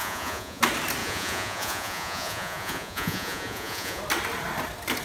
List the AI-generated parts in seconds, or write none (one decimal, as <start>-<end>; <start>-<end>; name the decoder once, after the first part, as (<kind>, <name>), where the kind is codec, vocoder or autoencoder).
0.0-0.6 (vocoder, Vocos); 1.0-4.0